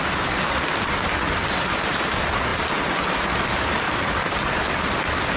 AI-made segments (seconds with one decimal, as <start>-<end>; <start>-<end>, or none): none